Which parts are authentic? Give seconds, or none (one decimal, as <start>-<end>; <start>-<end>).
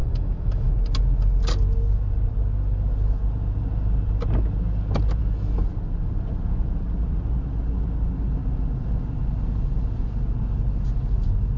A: 0.7-11.6